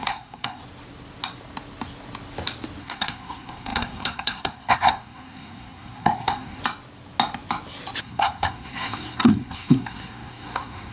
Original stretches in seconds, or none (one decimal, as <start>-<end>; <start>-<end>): 0.6-2.8; 6.6-8.0